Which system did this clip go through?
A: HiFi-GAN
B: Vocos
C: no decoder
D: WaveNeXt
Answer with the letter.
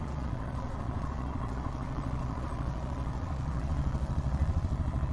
B